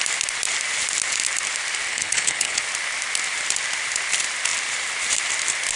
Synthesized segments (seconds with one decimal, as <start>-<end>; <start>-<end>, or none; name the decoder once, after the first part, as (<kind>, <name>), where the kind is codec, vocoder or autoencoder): 1.9-2.6 (codec, HILCodec)